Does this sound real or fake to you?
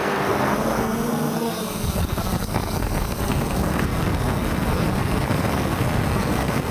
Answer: fake